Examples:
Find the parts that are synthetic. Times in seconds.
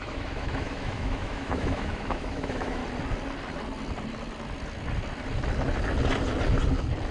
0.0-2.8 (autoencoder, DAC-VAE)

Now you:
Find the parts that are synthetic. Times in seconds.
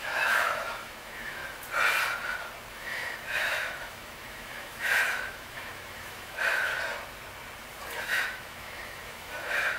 0.0-1.4 (autoencoder, DAC-VAE); 2.7-6.7; 8.0-9.8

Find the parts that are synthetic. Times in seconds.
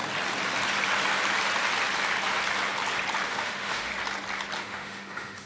3.3-3.9 (autoencoder, DAC-VAE); 4.6-5.5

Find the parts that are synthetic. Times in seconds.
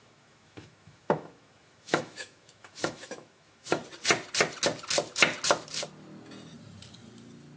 0.0-3.8 (autoencoder, DAC-VAE)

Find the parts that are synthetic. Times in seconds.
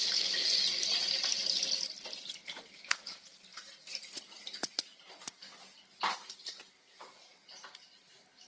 none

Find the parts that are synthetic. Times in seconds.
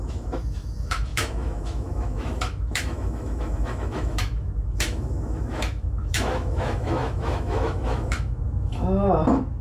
0.0-9.6 (autoencoder, DAC-VAE)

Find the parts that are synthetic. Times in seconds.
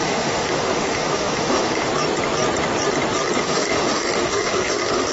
0.0-1.9 (autoencoder, DAC-VAE); 3.4-5.1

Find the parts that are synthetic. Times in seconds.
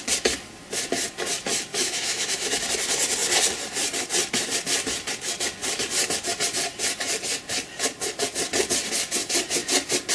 1.7-2.6 (autoencoder, DAC-VAE)